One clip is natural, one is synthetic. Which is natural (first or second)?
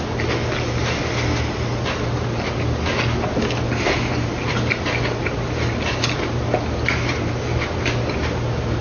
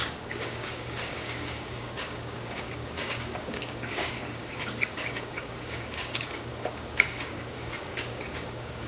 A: first